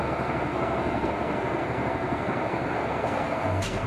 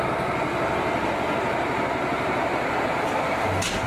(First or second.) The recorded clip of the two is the second